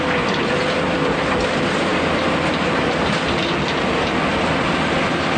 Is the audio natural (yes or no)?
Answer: yes